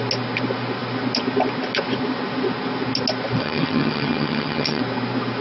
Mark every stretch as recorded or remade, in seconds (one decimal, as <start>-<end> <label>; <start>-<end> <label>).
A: 0.0-3.4 recorded; 3.4-4.8 remade; 4.8-5.4 recorded

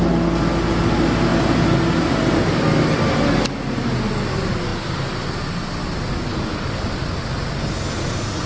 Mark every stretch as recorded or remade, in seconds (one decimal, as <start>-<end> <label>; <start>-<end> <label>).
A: 0.0-8.5 recorded

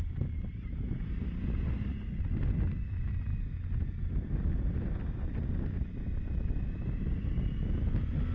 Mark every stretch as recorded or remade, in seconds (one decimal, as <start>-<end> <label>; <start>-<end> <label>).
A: 0.0-8.3 recorded